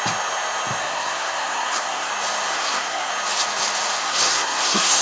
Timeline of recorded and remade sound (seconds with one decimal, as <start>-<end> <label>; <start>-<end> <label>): 0.0-0.8 recorded; 0.8-2.1 remade; 2.1-2.5 recorded; 2.5-3.1 remade; 3.1-4.0 recorded; 4.0-5.0 remade